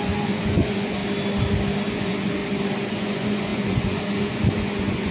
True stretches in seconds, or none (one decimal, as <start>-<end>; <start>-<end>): 1.0-1.9; 2.4-2.9